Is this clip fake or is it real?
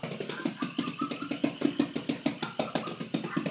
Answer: real